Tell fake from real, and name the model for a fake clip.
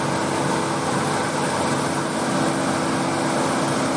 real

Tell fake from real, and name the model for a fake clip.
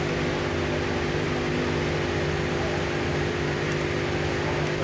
real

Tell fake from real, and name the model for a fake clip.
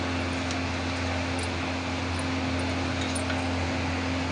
real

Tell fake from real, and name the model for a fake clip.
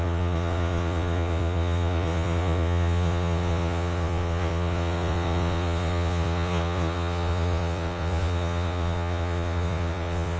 fake, vocoder, Vocos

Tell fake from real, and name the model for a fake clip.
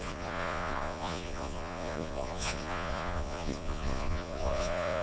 fake, vocoder, Vocos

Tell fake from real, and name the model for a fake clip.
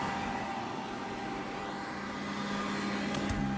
real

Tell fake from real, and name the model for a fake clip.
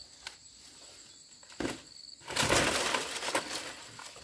real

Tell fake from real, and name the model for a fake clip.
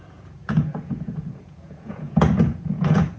fake, vocoder, Vocos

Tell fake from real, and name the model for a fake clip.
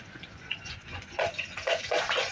fake, vocoder, Vocos